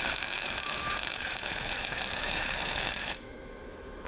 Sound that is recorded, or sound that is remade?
remade